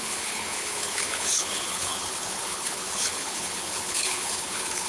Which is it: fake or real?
fake